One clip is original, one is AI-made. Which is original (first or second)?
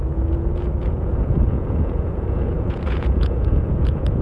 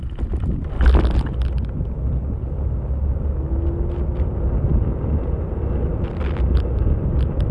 second